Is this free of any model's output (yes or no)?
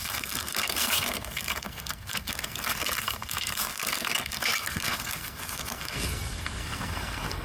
no